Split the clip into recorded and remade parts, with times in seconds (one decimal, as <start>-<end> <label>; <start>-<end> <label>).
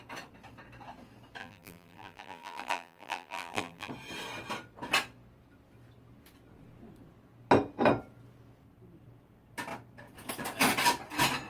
0.0-1.4 recorded; 1.4-3.9 remade; 3.9-11.5 recorded